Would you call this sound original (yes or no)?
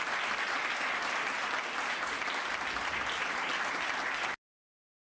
yes